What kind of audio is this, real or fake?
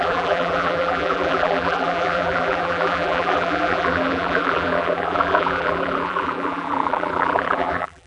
fake